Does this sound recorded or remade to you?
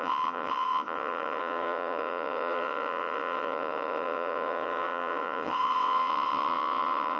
remade